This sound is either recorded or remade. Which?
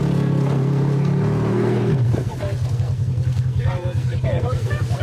remade